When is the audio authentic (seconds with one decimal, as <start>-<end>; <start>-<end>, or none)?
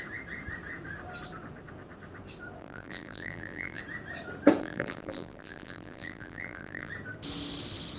0.0-2.6; 3.8-4.6; 6.9-8.0